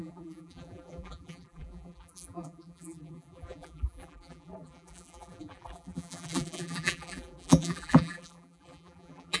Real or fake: fake